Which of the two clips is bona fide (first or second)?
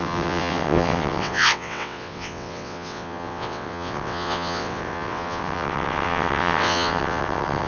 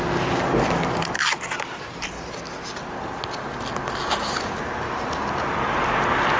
second